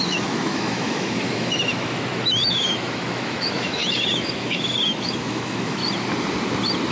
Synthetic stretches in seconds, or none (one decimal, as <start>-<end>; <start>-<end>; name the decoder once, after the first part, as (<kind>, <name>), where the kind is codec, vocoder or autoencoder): 0.0-5.8 (autoencoder, DAC-VAE)